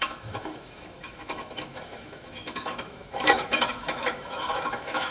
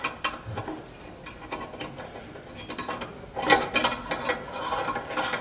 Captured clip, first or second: second